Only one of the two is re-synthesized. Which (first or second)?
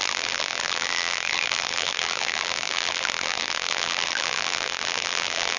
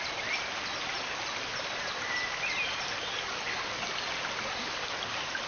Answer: first